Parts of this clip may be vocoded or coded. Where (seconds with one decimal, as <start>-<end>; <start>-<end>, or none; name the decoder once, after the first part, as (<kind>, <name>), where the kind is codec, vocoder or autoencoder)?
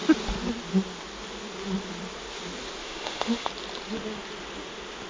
2.8-3.5 (autoencoder, DAC-VAE)